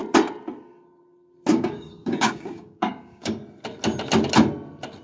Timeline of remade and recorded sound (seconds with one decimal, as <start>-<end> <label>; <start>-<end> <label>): 0.0-1.5 recorded; 1.5-3.4 remade; 3.4-5.0 recorded